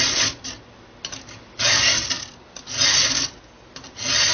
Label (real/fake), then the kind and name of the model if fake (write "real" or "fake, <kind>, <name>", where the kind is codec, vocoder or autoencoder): real